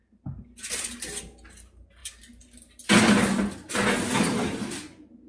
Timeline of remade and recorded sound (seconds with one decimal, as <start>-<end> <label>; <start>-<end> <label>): 0.0-5.3 recorded